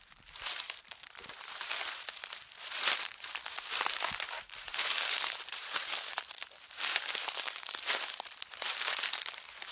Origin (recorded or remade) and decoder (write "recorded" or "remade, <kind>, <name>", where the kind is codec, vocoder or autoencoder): remade, vocoder, BigVGAN v2